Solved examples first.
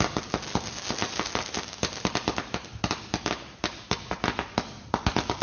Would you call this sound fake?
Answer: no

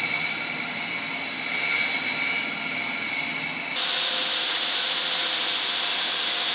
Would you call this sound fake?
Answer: no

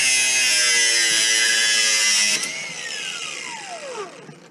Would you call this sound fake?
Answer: no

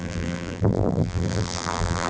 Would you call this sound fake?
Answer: yes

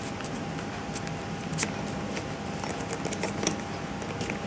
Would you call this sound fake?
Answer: no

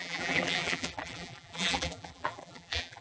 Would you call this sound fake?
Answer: yes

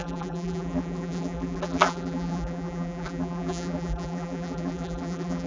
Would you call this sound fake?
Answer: yes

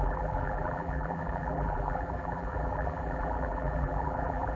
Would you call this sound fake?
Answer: yes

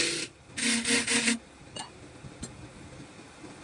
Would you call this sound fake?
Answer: no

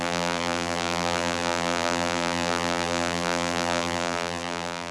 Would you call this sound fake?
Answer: yes